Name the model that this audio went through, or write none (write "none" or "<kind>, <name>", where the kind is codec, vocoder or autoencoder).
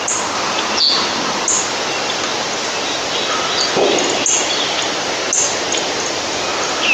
none